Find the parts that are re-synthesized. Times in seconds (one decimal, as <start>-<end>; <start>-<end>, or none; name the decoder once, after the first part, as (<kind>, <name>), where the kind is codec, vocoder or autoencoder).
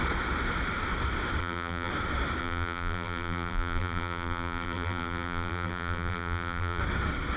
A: 1.4-1.9 (vocoder, BigVGAN v2); 2.4-6.8